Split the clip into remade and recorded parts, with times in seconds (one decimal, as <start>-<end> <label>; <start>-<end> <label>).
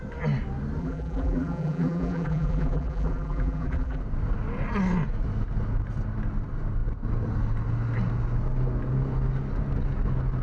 0.0-0.8 recorded; 0.8-4.0 remade; 4.0-10.4 recorded